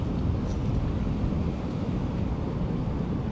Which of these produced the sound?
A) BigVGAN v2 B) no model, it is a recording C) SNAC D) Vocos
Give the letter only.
B